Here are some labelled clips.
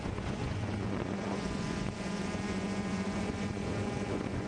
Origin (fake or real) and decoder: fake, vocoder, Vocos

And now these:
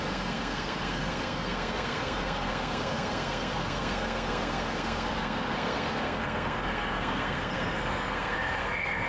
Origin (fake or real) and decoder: fake, codec, SNAC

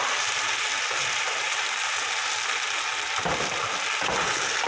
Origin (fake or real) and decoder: real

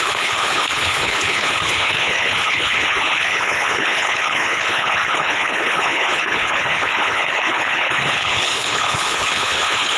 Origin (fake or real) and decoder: fake, codec, HILCodec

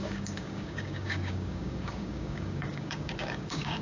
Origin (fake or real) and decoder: fake, codec, DAC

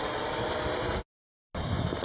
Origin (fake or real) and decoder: real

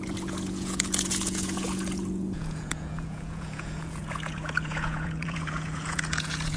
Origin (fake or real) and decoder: fake, vocoder, Vocos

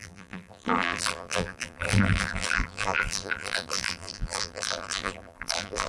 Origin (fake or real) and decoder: fake, vocoder, BigVGAN v2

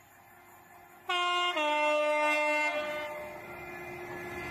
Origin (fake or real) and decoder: real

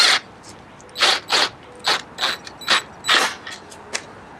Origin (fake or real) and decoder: real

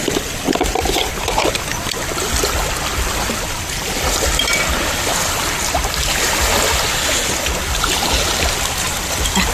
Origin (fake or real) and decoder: real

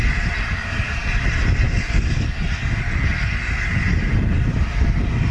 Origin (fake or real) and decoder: real